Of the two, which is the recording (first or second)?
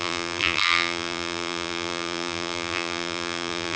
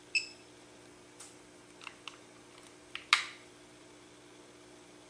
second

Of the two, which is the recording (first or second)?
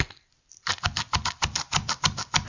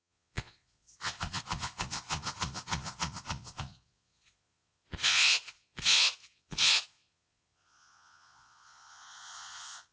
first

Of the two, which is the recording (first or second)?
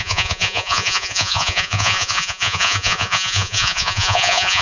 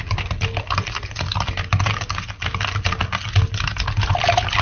second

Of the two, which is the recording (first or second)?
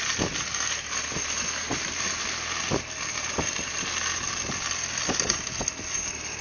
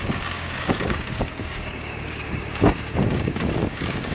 first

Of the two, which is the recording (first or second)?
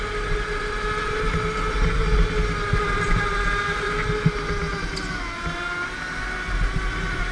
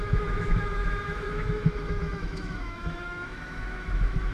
first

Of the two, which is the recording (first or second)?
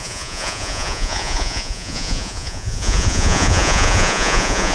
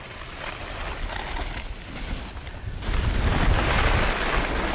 second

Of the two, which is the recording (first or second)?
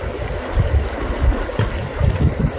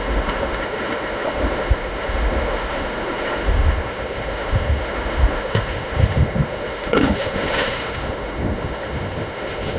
first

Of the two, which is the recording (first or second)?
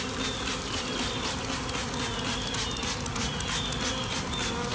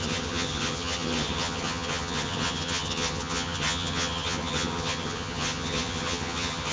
first